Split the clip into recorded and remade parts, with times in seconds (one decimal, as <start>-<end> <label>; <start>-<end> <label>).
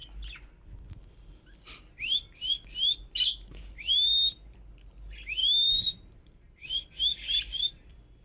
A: 0.0-5.4 recorded; 5.4-8.2 remade